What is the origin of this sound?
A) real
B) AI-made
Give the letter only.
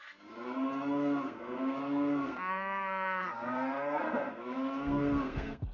B